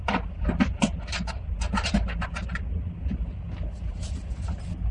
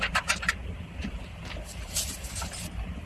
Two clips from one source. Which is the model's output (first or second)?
second